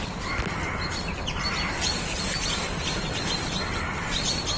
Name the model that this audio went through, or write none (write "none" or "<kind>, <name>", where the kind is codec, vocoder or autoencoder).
none